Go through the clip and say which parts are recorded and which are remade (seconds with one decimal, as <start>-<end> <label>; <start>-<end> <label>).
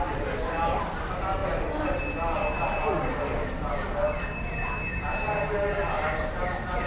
0.0-6.9 recorded